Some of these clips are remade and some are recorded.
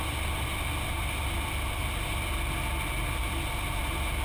recorded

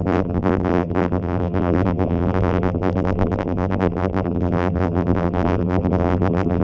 remade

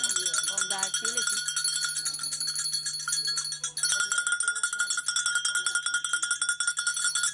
recorded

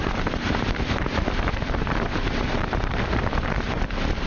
remade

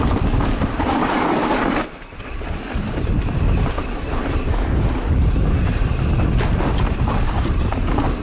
remade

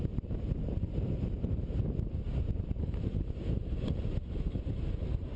remade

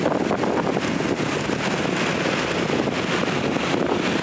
recorded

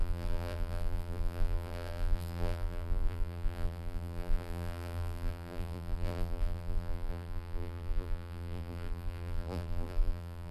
remade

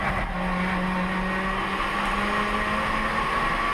recorded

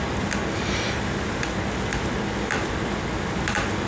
recorded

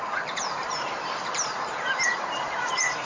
remade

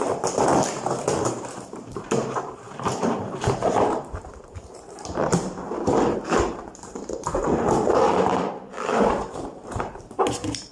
remade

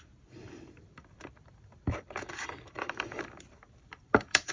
remade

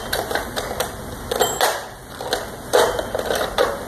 remade